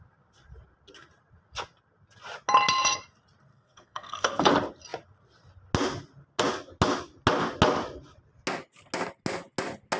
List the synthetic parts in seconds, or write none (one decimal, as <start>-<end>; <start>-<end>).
3.5-4.5